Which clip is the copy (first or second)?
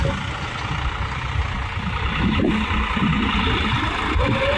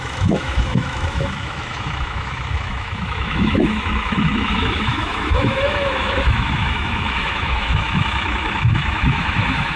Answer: second